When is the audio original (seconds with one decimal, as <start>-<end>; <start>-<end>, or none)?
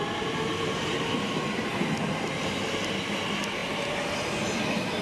0.0-5.0